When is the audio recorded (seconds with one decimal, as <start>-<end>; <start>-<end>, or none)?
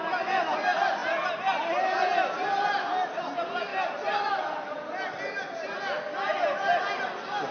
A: 0.0-7.5